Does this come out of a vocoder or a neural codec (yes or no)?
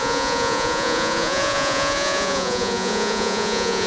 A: yes